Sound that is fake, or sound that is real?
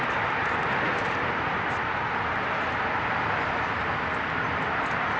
fake